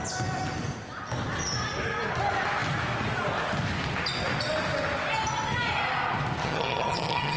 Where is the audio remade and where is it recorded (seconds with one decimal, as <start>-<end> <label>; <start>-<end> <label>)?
0.0-6.4 recorded; 6.4-7.4 remade